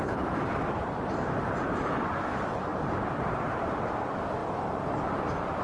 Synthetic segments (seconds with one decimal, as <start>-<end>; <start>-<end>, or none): 0.0-4.4